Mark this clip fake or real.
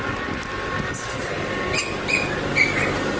real